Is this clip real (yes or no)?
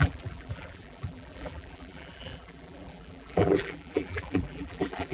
no